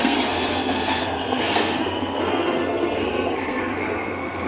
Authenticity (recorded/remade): remade